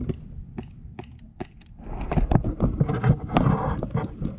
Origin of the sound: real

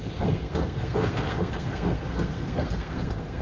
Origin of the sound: fake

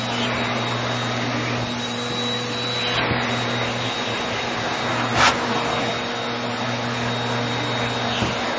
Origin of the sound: real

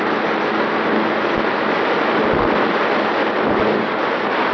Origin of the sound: real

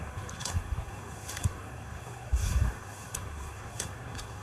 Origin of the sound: fake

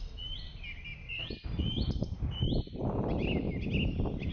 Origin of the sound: real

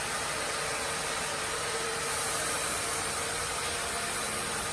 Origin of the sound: real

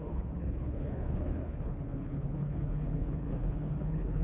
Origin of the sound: fake